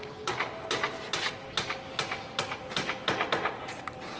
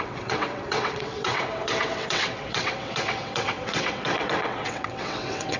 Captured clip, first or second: first